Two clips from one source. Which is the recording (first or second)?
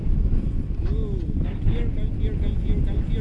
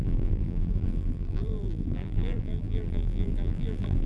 first